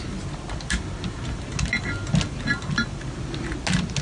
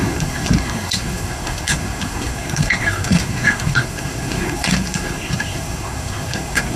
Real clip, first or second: first